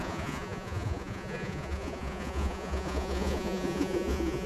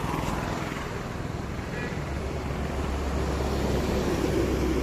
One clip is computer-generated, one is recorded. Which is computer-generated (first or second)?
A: first